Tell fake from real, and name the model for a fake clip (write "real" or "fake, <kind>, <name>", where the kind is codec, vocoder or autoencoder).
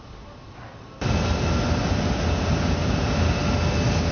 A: real